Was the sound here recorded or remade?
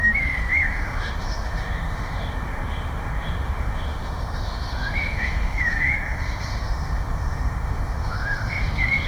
remade